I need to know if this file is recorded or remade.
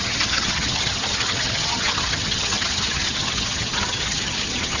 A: remade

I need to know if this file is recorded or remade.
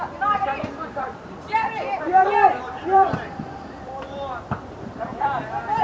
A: remade